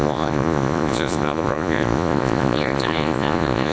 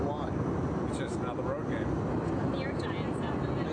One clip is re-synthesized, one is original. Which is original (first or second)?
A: second